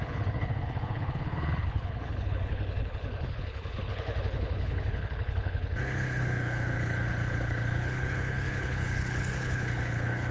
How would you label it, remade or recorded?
remade